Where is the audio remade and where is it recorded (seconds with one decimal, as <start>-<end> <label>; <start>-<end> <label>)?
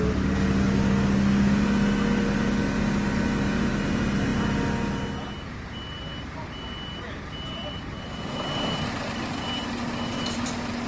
0.0-10.9 recorded